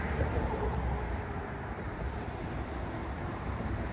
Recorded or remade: remade